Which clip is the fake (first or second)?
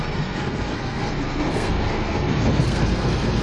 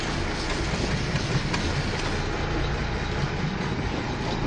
first